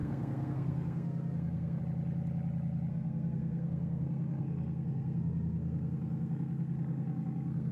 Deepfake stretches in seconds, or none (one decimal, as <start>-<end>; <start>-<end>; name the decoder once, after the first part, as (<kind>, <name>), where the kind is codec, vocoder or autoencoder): 0.0-1.8 (codec, SNAC); 2.9-7.7